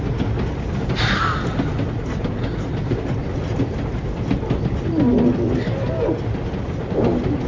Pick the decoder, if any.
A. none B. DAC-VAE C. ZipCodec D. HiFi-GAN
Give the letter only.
A